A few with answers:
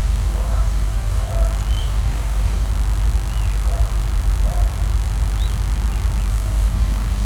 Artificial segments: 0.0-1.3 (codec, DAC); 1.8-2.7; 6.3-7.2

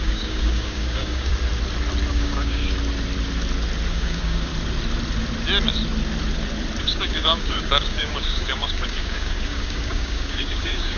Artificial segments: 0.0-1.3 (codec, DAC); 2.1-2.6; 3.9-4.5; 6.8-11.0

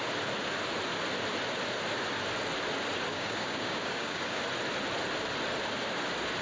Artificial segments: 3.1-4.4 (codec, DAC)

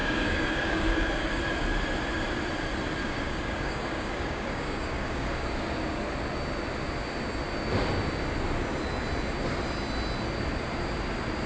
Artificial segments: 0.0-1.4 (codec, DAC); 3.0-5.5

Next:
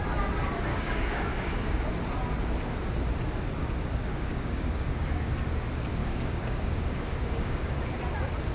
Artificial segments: 0.7-1.9 (codec, DAC); 3.6-5.3; 6.0-7.7